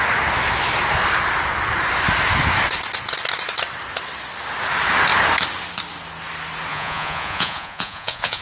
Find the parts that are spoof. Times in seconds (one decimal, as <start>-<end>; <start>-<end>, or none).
6.7-8.4